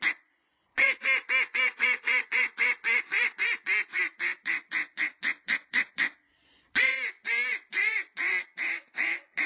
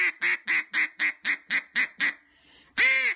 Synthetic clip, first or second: first